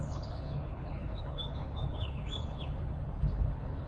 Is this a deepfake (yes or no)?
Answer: yes